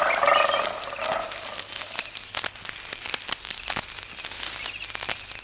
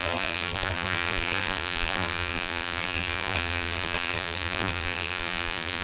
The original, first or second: first